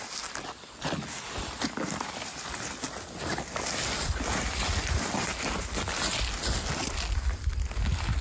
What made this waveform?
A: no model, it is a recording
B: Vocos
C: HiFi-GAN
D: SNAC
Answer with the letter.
A